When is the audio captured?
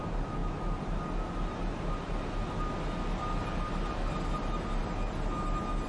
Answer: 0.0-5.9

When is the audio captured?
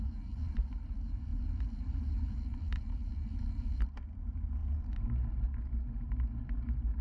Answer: none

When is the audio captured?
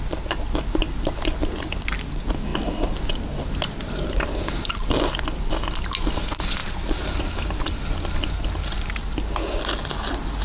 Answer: 0.0-10.4